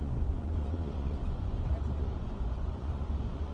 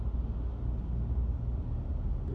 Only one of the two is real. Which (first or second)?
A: second